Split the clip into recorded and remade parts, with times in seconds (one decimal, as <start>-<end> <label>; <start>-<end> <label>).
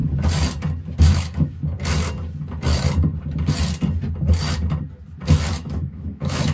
0.0-1.0 recorded; 1.0-1.6 remade; 1.6-5.5 recorded; 5.5-6.5 remade